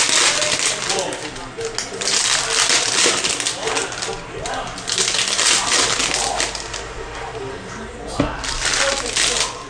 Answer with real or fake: real